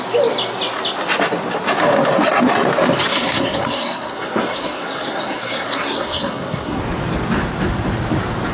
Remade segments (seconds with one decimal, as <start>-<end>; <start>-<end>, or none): 3.1-6.8